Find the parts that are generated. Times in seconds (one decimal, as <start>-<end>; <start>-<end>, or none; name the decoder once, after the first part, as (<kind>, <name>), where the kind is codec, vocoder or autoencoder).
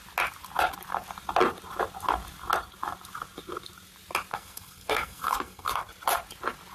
4.3-5.8 (codec, SNAC)